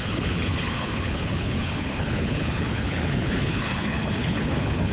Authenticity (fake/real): fake